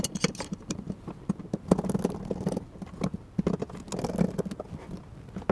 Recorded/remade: recorded